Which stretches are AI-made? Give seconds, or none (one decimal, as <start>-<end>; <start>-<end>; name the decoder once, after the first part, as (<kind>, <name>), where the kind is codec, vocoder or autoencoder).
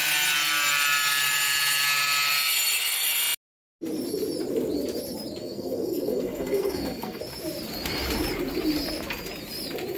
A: 5.4-7.2 (codec, SNAC)